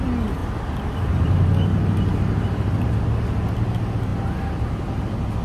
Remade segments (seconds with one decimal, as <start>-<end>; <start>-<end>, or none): none